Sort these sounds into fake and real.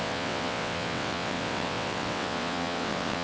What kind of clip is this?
fake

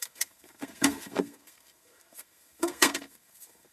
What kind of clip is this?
fake